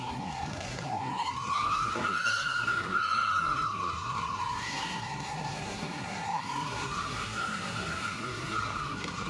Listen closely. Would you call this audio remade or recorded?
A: remade